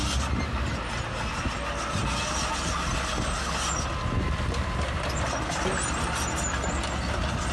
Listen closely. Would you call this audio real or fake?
real